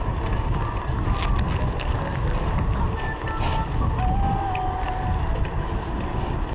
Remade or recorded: recorded